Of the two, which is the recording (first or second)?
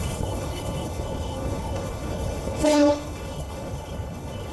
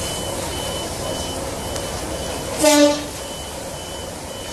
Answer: second